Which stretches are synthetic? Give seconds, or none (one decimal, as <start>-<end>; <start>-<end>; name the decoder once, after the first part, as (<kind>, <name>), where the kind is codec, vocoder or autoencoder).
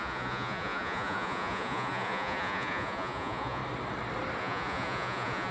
0.0-3.6 (vocoder, Vocos); 4.4-5.5